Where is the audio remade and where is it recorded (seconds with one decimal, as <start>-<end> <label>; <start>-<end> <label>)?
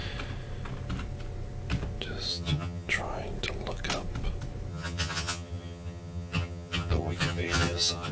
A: 0.0-2.3 recorded; 2.3-2.9 remade; 2.9-4.7 recorded; 4.7-8.1 remade